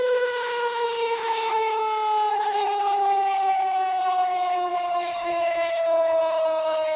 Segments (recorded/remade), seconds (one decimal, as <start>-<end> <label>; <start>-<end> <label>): 0.0-1.8 remade; 1.8-2.3 recorded; 2.3-7.0 remade